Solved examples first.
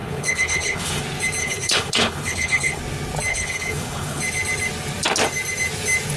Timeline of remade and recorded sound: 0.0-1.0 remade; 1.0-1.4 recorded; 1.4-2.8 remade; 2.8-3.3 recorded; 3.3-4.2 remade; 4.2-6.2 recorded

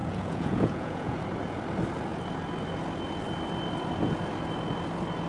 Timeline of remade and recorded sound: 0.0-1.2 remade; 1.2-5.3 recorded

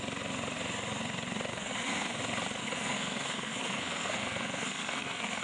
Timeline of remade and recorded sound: 0.0-1.5 recorded; 1.5-2.2 remade; 2.2-2.6 recorded; 2.6-5.4 remade

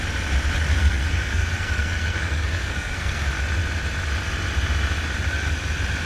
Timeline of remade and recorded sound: 0.0-0.7 recorded; 0.7-3.3 remade; 3.3-6.1 recorded

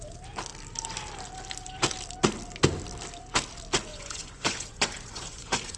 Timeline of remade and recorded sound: 0.0-3.9 recorded; 3.9-5.8 remade

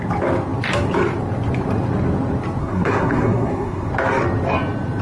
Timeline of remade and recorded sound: 0.0-2.6 recorded; 2.6-3.9 remade; 3.9-5.0 recorded